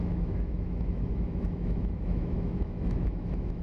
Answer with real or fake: fake